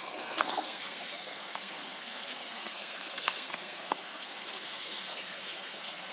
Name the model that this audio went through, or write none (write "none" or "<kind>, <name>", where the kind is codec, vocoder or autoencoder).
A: codec, SNAC